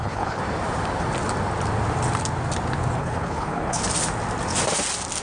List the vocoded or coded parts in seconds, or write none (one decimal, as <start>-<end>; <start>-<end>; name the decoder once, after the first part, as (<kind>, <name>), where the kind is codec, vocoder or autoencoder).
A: 0.0-0.4 (codec, HILCodec); 3.0-3.8